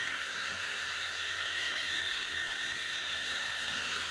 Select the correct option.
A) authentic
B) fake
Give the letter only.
B